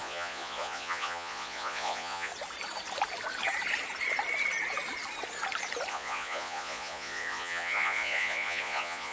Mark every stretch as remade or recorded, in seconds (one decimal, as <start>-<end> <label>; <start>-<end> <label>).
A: 0.0-2.3 remade; 2.3-5.9 recorded; 5.9-9.1 remade